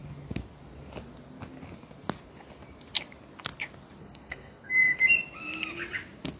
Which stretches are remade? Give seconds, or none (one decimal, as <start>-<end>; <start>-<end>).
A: 4.0-5.0